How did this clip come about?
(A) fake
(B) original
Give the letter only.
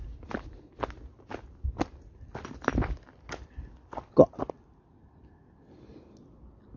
B